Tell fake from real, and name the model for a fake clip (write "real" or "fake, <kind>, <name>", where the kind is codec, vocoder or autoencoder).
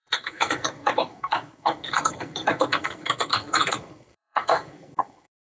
fake, codec, SNAC